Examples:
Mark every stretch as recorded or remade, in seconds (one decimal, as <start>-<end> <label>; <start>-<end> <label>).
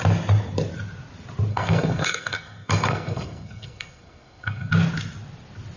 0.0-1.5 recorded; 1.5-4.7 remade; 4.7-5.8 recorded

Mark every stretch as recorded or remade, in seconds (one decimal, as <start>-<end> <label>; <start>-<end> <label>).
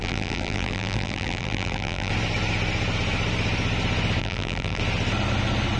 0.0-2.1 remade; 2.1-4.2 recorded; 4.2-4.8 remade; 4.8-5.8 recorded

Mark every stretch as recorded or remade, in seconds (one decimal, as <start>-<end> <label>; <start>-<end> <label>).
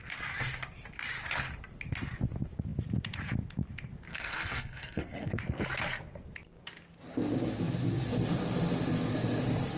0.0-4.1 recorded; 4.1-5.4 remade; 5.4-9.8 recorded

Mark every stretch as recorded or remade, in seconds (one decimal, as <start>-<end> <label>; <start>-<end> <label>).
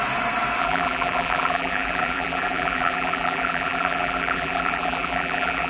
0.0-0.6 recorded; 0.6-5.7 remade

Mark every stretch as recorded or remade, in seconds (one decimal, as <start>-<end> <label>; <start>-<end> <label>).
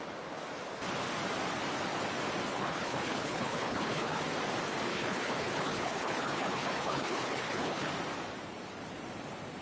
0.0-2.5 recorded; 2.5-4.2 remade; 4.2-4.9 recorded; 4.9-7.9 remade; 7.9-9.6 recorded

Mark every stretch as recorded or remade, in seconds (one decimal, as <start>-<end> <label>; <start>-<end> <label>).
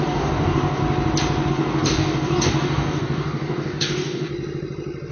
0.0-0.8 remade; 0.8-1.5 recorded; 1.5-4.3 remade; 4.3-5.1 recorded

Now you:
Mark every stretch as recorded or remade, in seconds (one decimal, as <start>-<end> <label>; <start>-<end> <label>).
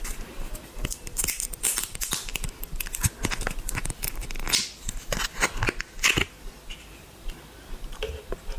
0.0-4.2 remade; 4.2-6.8 recorded; 6.8-8.6 remade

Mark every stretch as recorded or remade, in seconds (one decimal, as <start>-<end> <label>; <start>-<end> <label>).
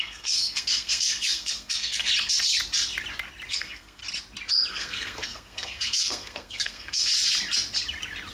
0.0-2.1 remade; 2.1-3.5 recorded; 3.5-4.0 remade; 4.0-4.7 recorded; 4.7-7.1 remade; 7.1-8.3 recorded